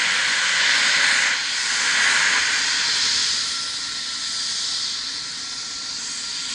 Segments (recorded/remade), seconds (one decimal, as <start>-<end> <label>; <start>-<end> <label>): 0.0-0.8 remade; 0.8-6.5 recorded